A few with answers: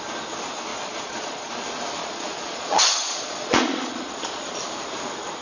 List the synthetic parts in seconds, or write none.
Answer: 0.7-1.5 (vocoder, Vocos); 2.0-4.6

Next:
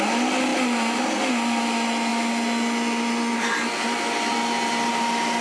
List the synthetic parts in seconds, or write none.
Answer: none

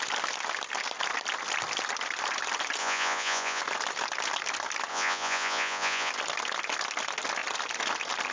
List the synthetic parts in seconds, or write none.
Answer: 2.8-3.6 (vocoder, Vocos); 4.9-6.1